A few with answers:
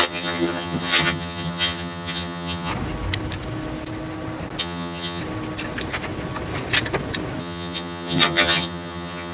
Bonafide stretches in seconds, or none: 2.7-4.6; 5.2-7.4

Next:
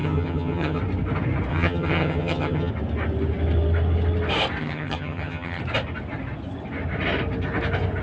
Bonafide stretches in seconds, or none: 0.8-1.5; 2.7-4.6; 5.6-8.0

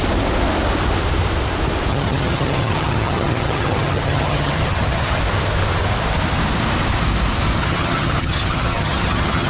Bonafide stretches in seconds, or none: 0.0-1.9; 5.2-7.6

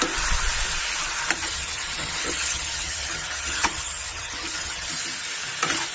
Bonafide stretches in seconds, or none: 0.0-1.4; 4.9-5.9